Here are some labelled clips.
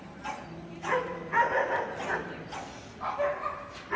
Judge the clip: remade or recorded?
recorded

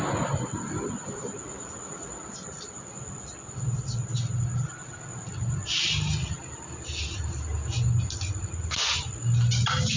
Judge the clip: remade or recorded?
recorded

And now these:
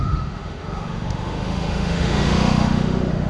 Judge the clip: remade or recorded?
remade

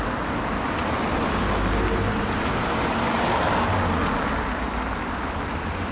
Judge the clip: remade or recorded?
recorded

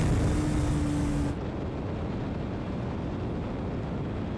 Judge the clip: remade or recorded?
recorded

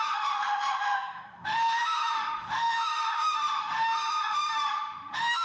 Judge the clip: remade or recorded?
remade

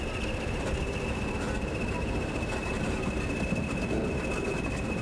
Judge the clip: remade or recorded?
recorded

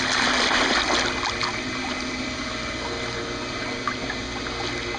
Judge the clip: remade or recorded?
recorded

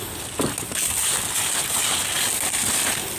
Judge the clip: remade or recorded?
recorded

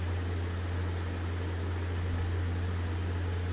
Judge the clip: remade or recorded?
recorded